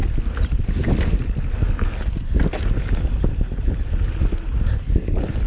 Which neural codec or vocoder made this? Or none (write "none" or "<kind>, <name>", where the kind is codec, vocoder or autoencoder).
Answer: none